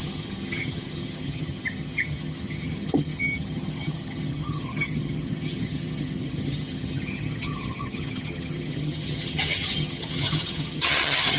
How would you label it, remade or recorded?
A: remade